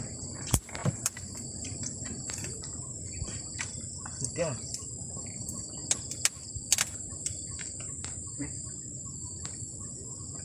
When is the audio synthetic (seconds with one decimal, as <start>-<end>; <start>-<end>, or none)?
0.0-4.1; 5.0-5.8; 7.1-10.4